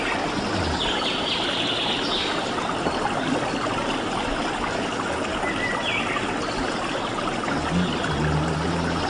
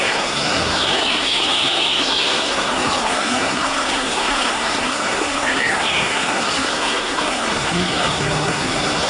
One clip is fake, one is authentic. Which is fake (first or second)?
second